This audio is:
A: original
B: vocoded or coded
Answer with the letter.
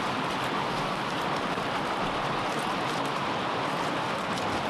B